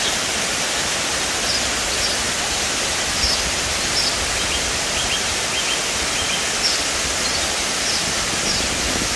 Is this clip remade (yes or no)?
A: no